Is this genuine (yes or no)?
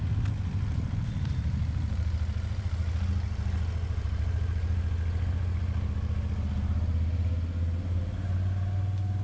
yes